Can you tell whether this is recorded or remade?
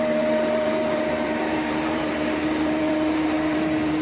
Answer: remade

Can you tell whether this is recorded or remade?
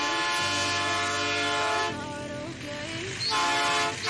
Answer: recorded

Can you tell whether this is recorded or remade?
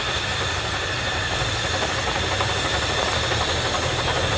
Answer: recorded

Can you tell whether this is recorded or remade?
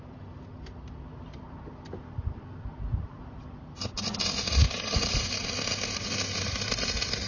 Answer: recorded